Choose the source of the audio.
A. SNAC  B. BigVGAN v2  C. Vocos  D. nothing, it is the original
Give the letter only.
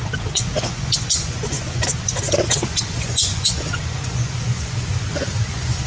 C